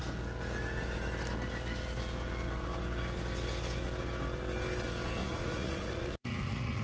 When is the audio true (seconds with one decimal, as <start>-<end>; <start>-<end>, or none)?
0.0-5.2